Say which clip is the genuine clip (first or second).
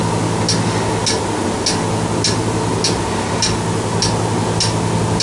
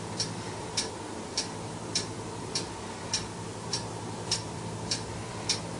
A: first